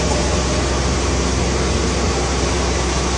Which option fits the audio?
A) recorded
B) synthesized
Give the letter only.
A